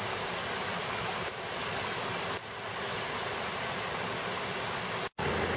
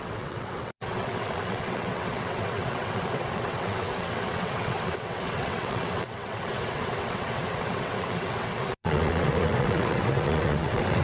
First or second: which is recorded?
first